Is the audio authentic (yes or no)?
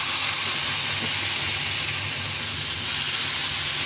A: yes